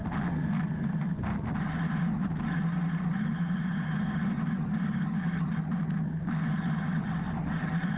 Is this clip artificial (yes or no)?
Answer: no